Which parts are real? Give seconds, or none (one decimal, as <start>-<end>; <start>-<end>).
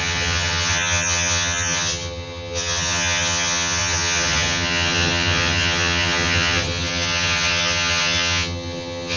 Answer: none